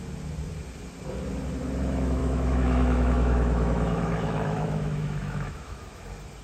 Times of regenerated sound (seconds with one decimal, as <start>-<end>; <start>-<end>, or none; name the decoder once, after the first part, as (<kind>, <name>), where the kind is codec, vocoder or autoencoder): 2.2-6.0 (autoencoder, DAC-VAE)